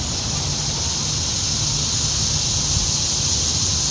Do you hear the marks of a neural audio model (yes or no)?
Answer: no